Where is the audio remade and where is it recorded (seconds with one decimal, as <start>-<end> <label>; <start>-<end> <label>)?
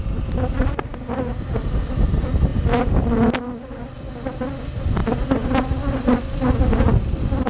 0.0-7.5 recorded